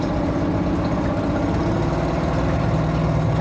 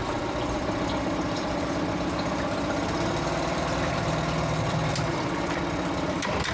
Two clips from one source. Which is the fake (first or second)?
second